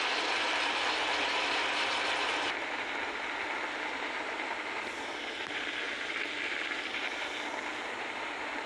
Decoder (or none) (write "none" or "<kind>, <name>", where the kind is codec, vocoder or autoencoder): none